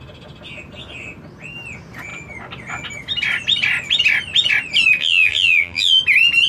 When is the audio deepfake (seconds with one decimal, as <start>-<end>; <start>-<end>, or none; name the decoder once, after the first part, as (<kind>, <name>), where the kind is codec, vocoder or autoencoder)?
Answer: 5.0-6.0 (vocoder, BigVGAN v2)